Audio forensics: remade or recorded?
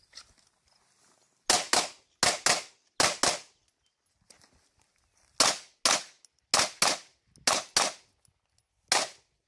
recorded